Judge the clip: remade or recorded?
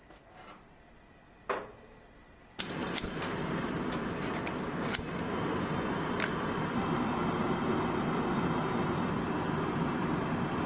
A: recorded